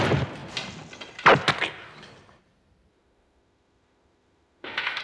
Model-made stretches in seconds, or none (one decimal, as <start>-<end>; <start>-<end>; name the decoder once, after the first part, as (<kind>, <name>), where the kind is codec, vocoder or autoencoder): 2.9-5.0 (autoencoder, DAC-VAE)